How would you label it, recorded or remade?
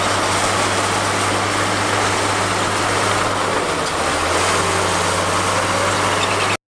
recorded